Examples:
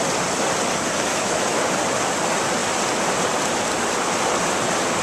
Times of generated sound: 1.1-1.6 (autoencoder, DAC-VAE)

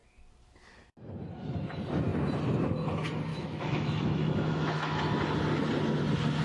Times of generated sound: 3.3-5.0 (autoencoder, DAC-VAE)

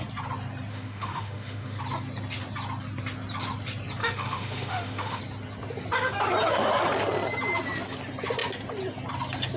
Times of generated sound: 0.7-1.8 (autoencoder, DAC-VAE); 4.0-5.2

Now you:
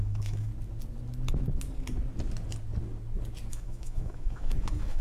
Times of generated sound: 0.0-0.5 (autoencoder, DAC-VAE); 3.5-5.0

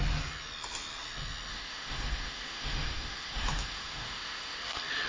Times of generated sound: 1.5-4.6 (autoencoder, DAC-VAE)